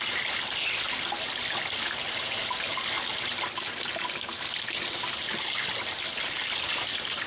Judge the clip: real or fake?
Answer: real